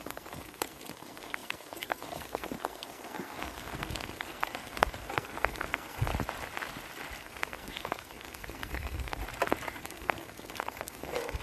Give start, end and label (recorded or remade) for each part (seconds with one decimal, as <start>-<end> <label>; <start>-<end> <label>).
0.0-6.1 remade; 6.1-7.2 recorded; 7.2-9.2 remade; 9.2-9.8 recorded; 9.8-11.4 remade